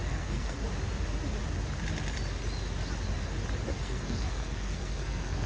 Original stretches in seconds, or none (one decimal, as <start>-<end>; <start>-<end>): 0.6-3.7